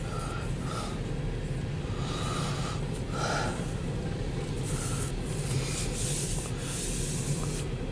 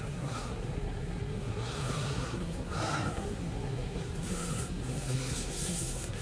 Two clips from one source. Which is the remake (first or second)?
second